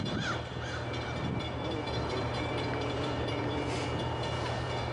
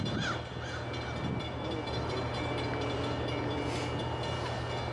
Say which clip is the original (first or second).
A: second